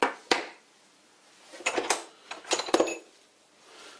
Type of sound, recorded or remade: recorded